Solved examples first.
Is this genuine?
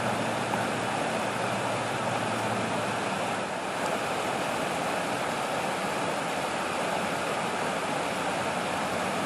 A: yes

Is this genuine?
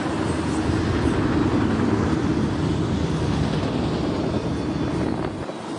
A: yes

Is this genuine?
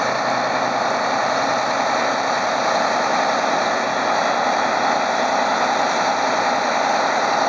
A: yes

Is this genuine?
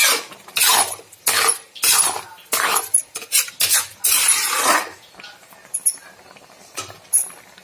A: yes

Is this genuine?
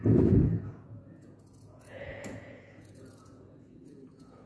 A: no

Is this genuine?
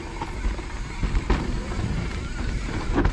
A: yes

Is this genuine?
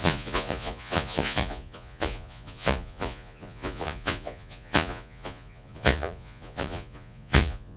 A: no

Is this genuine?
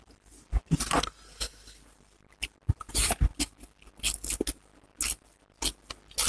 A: yes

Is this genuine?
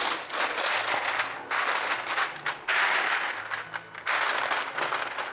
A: yes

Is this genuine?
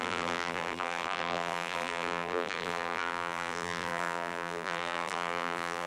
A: no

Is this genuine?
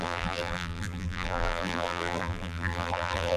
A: no